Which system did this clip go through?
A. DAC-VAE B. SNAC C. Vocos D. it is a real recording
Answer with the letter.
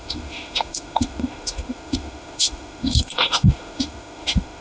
A